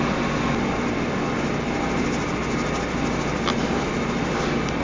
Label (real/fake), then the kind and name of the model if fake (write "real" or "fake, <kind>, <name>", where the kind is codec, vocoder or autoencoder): real